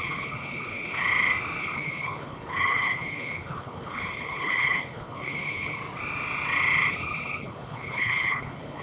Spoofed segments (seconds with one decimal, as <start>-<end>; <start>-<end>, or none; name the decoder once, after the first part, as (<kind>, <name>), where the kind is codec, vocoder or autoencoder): 0.0-1.0 (codec, HILCodec); 1.6-5.8; 6.9-8.8